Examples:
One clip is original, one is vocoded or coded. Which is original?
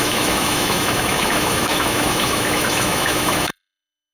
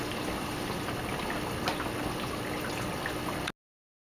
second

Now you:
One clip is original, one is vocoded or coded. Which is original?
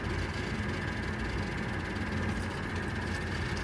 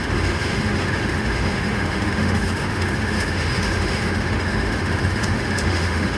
first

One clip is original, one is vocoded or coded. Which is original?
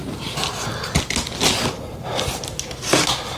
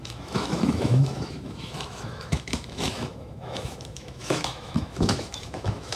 first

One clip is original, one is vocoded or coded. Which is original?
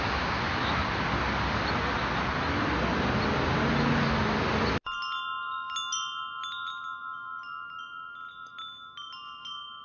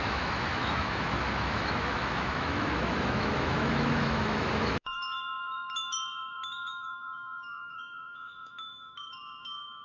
first